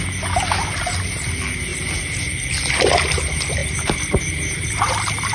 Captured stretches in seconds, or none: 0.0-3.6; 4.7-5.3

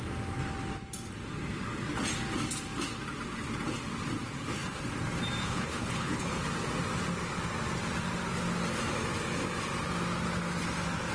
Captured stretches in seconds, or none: 0.0-5.4; 6.4-11.1